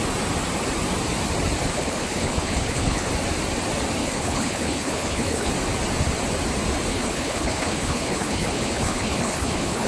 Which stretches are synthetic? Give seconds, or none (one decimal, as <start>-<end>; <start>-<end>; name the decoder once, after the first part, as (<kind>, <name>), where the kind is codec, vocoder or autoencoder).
1.7-3.1 (codec, HILCodec); 4.0-5.5; 6.9-9.9